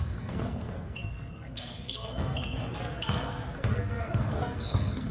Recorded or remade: remade